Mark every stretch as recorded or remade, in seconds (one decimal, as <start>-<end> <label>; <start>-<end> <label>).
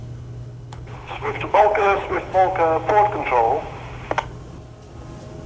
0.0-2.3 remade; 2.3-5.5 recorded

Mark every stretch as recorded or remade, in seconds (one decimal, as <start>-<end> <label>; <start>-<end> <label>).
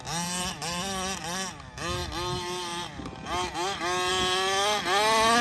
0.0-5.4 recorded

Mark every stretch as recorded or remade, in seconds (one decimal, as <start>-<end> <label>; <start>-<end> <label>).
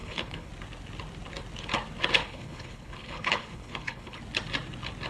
0.0-0.5 remade; 0.5-2.2 recorded; 2.2-4.2 remade; 4.2-5.1 recorded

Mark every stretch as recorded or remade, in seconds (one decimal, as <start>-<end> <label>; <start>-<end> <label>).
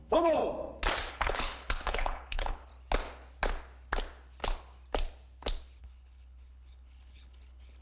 0.0-0.4 remade; 0.4-1.1 recorded; 1.1-2.7 remade; 2.7-5.8 recorded; 5.8-7.8 remade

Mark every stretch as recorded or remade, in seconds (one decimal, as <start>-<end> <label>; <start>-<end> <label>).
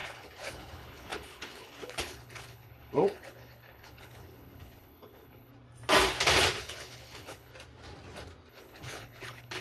0.0-5.5 remade; 5.5-6.6 recorded; 6.6-7.5 remade; 7.5-8.5 recorded; 8.5-9.6 remade